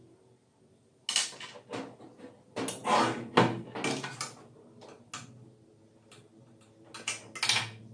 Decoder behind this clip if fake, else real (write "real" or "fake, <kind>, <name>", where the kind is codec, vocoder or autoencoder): real